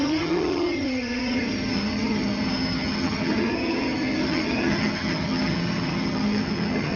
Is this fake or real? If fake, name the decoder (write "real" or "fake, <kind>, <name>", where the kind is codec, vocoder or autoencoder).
fake, vocoder, HiFi-GAN